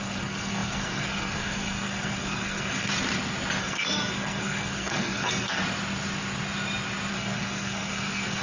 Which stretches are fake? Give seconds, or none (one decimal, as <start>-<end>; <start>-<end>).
0.0-2.9; 3.6-5.6; 7.1-8.4